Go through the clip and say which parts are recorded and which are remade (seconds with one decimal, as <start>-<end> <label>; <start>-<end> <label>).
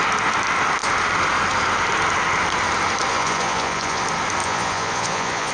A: 0.0-3.1 recorded; 3.1-4.0 remade; 4.0-4.4 recorded; 4.4-5.5 remade